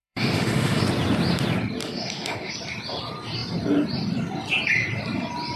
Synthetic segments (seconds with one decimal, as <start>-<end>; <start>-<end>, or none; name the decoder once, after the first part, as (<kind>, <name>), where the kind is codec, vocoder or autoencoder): 0.0-0.8 (autoencoder, DAC-VAE); 1.8-2.5

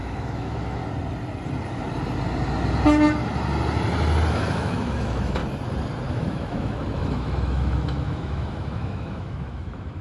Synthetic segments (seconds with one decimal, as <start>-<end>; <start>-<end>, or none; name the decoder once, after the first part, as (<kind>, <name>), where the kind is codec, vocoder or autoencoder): 0.0-0.8 (autoencoder, DAC-VAE); 4.3-5.4; 6.1-10.0

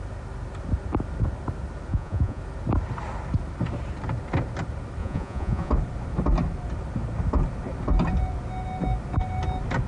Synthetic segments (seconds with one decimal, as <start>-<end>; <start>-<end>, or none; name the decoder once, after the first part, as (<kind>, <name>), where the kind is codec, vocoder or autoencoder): 1.9-2.4 (vocoder, Vocos); 5.0-5.7